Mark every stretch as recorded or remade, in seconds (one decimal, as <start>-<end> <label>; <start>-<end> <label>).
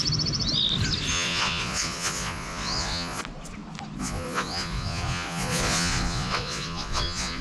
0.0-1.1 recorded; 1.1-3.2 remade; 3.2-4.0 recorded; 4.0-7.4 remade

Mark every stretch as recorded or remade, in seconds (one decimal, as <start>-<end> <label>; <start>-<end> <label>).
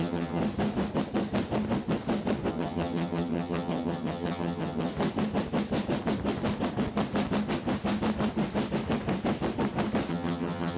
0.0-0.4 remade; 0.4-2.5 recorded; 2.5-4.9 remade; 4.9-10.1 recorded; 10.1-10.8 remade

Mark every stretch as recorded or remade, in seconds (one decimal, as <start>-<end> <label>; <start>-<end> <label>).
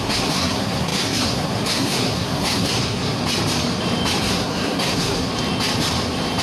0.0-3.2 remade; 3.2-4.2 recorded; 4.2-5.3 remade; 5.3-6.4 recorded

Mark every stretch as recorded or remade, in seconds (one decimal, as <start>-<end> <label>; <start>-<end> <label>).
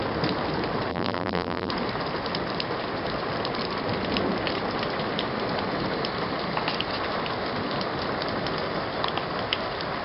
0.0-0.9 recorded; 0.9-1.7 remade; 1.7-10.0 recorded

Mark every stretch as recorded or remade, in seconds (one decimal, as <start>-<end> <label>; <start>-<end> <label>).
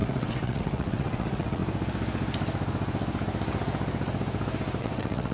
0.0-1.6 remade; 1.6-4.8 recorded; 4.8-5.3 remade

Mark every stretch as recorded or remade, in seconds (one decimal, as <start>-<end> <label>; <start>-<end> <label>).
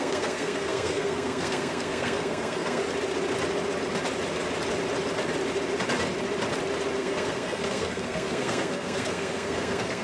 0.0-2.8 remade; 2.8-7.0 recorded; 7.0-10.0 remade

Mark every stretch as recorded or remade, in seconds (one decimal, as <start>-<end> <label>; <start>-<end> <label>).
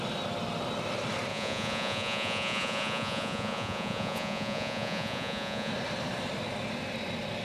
0.0-1.3 recorded; 1.3-5.7 remade; 5.7-7.4 recorded